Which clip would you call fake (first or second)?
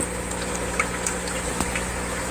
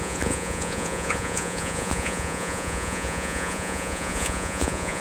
second